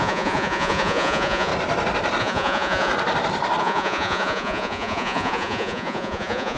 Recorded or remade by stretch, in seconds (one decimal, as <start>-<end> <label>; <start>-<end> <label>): 0.0-1.5 remade; 1.5-2.2 recorded; 2.2-2.9 remade; 2.9-3.6 recorded; 3.6-6.6 remade